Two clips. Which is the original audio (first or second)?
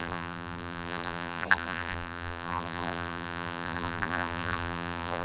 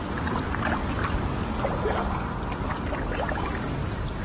second